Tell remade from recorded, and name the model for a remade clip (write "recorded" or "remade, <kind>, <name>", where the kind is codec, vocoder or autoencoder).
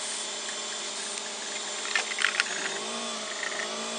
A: recorded